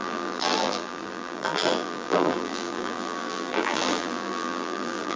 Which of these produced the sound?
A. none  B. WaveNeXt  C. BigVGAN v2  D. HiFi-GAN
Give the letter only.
C